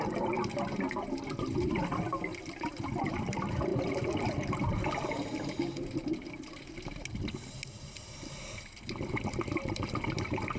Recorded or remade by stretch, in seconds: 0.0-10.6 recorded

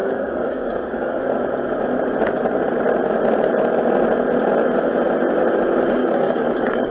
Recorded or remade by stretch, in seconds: 0.0-1.2 remade; 1.2-6.0 recorded; 6.0-6.9 remade